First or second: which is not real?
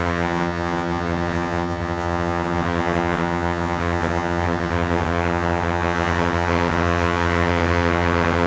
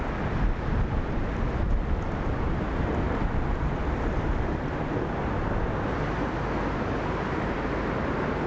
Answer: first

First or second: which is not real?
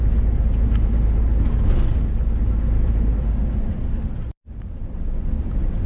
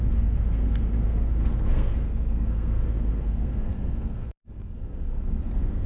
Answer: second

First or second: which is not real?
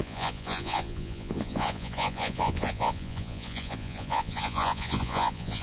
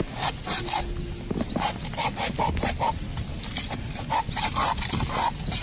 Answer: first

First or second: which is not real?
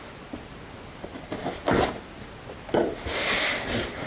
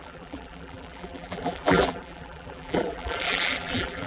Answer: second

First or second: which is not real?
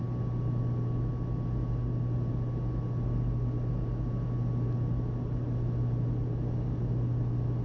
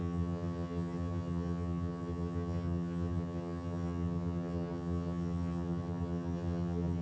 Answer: second